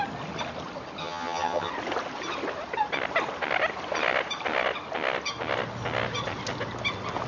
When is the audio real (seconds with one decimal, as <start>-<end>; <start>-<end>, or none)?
0.0-1.0; 1.7-7.3